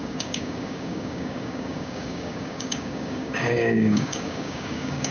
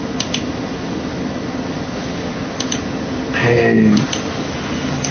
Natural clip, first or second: second